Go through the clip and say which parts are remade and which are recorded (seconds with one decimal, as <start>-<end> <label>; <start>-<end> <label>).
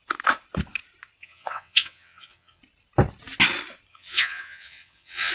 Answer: 0.0-1.2 recorded; 1.2-2.6 remade; 2.6-3.9 recorded; 3.9-5.3 remade